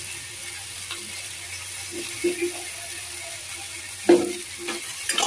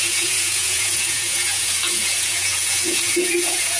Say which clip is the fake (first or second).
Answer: second